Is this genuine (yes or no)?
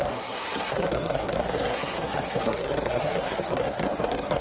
no